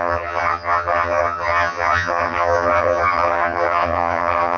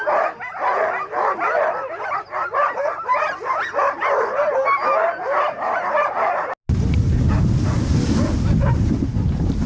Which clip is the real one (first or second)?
second